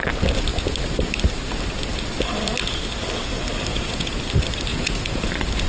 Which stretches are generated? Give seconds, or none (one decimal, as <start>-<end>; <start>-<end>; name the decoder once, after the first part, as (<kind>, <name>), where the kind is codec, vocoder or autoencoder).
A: 3.7-4.2 (vocoder, Vocos); 4.7-5.3